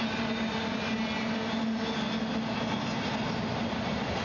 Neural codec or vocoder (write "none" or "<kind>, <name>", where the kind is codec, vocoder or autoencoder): none